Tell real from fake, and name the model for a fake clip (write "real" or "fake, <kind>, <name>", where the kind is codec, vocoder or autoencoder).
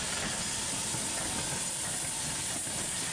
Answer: real